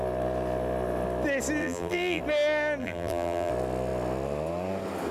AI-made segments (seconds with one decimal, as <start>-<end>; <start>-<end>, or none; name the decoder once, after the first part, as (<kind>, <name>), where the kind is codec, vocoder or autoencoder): 1.6-2.2 (vocoder, BigVGAN v2); 2.8-3.5